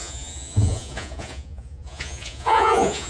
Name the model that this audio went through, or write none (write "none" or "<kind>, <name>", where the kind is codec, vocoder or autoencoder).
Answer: vocoder, Vocos